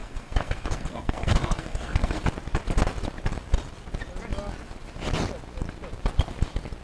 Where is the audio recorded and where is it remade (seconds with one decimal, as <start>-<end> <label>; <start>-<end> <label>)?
0.0-2.2 remade; 2.2-6.8 recorded